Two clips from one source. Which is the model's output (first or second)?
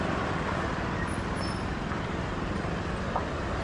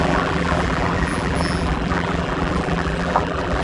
second